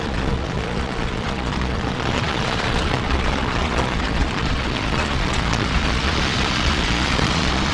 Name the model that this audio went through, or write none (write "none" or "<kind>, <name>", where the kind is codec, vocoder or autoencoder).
vocoder, Vocos